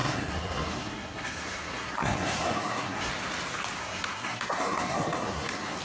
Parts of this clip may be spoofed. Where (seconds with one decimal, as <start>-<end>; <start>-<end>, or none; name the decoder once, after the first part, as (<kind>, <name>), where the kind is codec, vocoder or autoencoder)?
0.0-3.1 (codec, SNAC); 3.8-5.8